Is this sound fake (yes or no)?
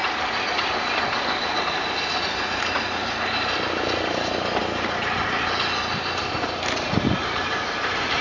no